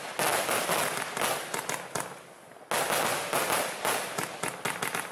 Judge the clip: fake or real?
real